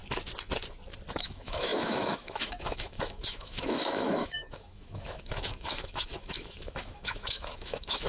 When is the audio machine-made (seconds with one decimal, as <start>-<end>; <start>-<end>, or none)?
1.1-8.1